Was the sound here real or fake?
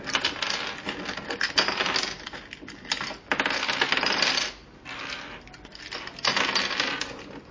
real